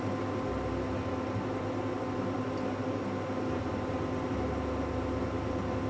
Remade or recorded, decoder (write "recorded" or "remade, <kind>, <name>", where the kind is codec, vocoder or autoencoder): recorded